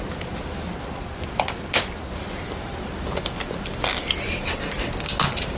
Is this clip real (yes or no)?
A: yes